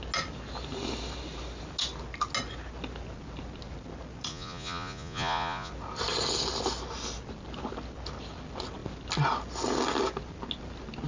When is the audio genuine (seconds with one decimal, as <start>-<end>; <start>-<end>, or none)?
0.0-4.3; 5.7-11.1